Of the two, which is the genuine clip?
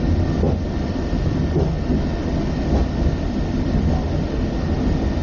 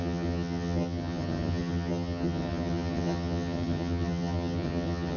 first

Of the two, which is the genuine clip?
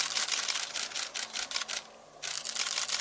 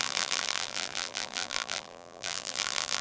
first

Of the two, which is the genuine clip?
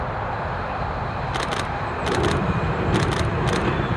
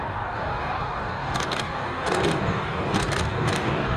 first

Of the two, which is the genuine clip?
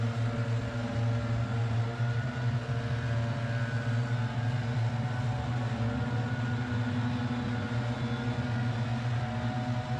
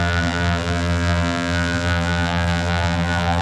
first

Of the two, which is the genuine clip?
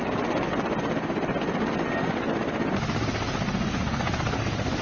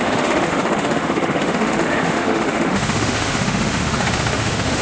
first